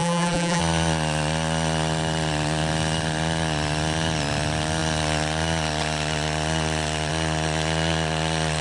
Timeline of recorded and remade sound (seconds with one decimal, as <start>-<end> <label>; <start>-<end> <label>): 0.0-0.6 remade; 0.6-8.6 recorded